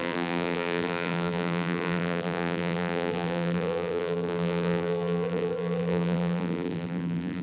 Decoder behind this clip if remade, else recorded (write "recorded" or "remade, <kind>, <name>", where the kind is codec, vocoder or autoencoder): remade, vocoder, BigVGAN v2